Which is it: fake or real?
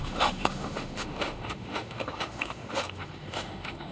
fake